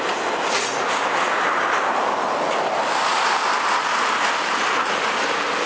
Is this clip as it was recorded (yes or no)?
yes